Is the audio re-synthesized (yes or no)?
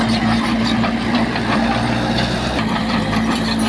yes